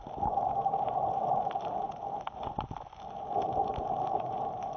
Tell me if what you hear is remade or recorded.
recorded